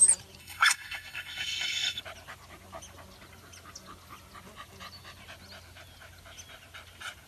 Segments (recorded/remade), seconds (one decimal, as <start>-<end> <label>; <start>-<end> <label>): 0.0-0.4 recorded; 0.4-2.0 remade; 2.0-7.3 recorded